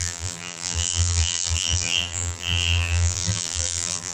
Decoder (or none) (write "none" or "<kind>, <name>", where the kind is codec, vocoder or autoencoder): vocoder, BigVGAN v2